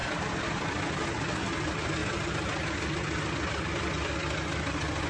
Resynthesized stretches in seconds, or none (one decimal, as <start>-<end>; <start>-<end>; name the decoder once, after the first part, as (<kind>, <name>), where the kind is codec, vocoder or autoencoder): none